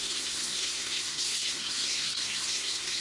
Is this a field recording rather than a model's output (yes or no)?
no